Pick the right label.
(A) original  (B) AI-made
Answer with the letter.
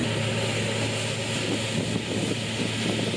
A